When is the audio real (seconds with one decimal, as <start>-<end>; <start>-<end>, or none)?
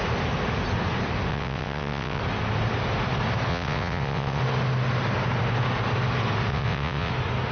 0.0-1.3; 2.2-3.5; 4.4-6.5; 7.1-7.5